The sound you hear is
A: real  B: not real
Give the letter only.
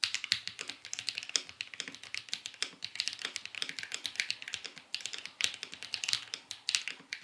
A